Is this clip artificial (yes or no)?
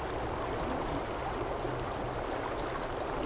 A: no